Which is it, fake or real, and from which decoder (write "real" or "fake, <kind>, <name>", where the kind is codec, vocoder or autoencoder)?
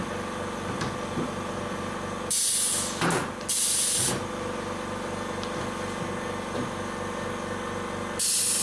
real